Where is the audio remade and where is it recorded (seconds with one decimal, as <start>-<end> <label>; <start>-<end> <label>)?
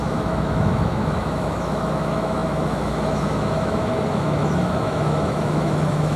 0.0-6.2 remade